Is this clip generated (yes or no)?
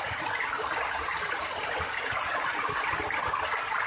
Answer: no